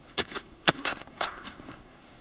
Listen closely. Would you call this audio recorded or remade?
remade